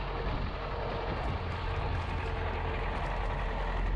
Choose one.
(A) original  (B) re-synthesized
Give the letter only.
A